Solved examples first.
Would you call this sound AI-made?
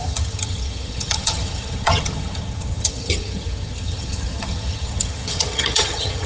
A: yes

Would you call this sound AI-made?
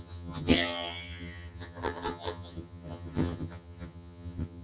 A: yes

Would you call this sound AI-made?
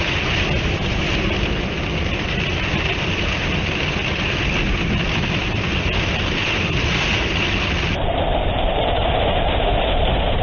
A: no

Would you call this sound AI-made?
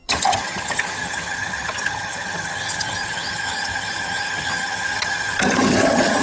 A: yes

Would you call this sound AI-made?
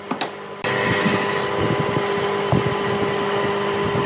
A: no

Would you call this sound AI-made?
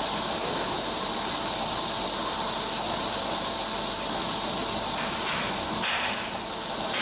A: no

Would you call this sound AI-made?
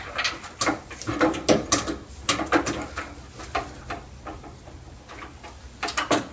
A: no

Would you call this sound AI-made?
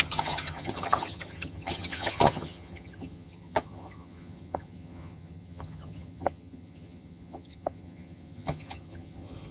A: yes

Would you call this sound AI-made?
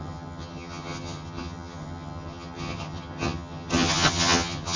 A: yes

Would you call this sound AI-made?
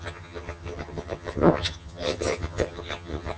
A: yes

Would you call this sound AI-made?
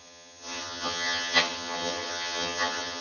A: yes